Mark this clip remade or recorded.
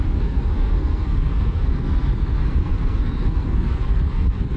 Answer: remade